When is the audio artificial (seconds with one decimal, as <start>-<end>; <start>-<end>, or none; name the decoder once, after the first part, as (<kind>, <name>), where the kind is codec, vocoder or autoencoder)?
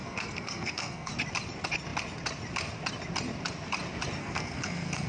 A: 0.0-1.1 (codec, SNAC); 4.2-5.1